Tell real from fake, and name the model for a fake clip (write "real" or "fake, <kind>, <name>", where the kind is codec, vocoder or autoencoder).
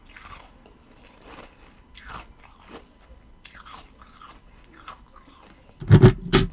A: real